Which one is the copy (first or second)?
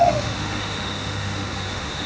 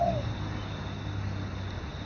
first